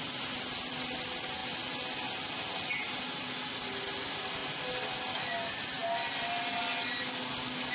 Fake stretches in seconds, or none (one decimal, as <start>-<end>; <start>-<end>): none